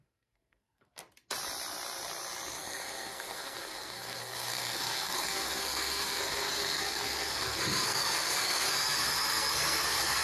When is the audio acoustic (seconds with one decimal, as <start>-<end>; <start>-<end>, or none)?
1.0-2.5